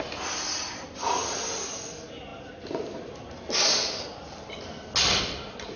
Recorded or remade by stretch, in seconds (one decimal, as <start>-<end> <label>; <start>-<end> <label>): 0.0-5.8 recorded